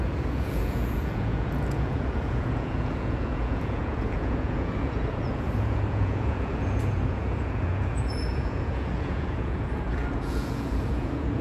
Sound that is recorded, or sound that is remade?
remade